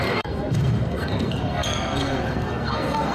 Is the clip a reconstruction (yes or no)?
yes